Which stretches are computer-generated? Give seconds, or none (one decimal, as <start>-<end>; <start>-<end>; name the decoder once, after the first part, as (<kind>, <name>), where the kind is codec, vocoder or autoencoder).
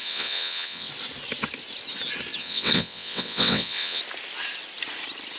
0.0-0.9 (vocoder, WaveNeXt); 2.4-4.0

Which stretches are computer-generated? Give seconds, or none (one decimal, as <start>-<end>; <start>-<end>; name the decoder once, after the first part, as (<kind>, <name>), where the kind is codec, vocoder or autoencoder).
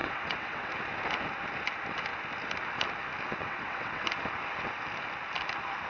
0.0-0.7 (vocoder, WaveNeXt); 3.4-4.0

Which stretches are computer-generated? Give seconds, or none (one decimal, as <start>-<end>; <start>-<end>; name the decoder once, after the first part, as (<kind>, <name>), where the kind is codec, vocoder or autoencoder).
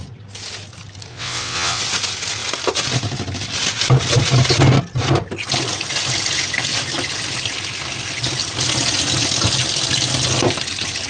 1.1-1.8 (vocoder, WaveNeXt)